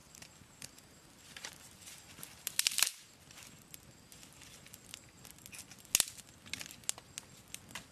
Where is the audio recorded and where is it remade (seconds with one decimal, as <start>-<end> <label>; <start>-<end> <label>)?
0.0-1.8 remade; 1.8-7.9 recorded